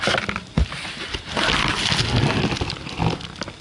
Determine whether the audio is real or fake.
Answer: real